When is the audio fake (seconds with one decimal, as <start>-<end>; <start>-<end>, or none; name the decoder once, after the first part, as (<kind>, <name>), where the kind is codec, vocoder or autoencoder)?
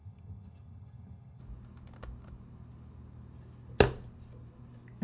0.0-1.4 (vocoder, HiFi-GAN)